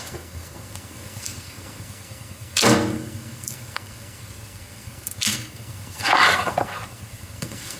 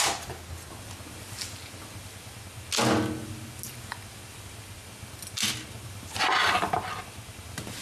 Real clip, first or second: second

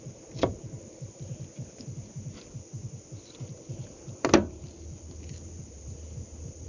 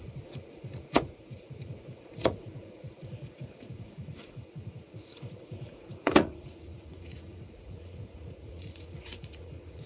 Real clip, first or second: first